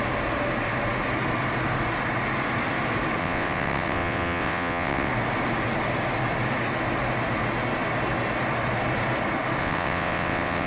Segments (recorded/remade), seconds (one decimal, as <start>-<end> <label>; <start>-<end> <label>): 0.0-3.2 recorded; 3.2-5.1 remade; 5.1-9.6 recorded; 9.6-10.7 remade